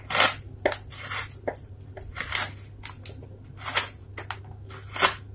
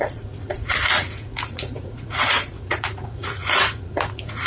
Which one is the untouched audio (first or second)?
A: first